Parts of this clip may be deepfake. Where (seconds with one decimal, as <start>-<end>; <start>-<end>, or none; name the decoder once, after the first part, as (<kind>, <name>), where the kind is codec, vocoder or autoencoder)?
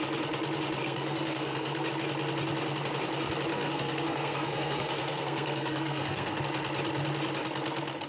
0.8-1.9 (codec, SNAC); 3.5-6.4